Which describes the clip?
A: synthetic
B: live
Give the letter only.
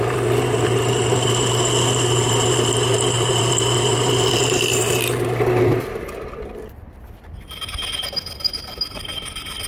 B